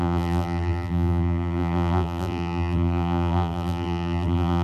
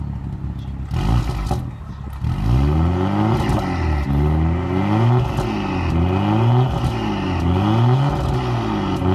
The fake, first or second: first